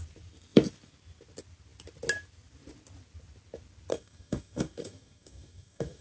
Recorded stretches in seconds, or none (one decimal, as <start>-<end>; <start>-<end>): 0.0-3.9